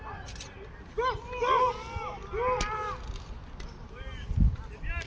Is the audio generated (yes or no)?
no